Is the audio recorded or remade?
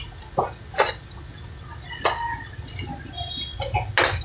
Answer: recorded